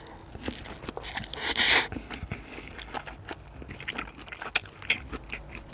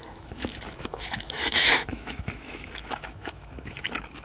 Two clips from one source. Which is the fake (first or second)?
second